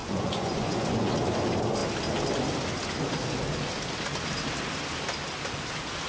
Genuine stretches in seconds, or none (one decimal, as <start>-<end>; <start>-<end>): 1.1-6.1